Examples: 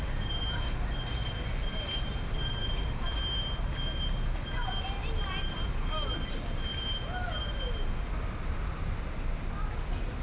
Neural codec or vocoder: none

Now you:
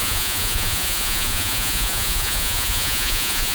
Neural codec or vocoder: vocoder, Vocos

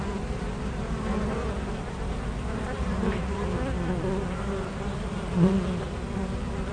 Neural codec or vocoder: none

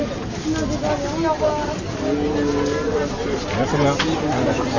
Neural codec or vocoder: none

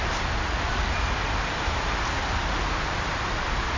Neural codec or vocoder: none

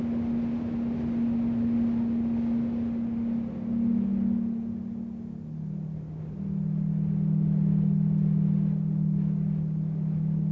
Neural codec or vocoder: none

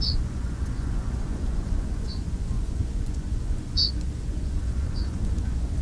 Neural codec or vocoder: vocoder, Vocos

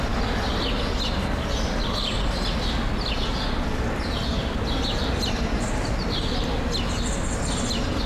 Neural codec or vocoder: none